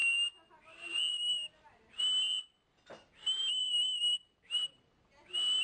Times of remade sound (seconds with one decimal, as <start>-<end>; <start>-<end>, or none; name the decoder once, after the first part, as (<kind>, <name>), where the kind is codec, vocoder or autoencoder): none